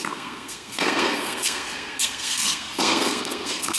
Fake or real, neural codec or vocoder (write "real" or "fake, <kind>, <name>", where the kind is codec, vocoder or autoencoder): fake, codec, SNAC